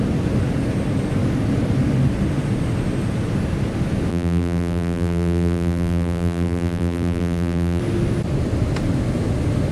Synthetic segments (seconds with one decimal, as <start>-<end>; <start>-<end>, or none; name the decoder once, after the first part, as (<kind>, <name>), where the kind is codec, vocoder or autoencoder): 4.1-7.8 (vocoder, BigVGAN v2)